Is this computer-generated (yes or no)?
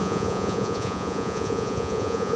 yes